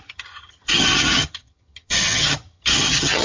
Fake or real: fake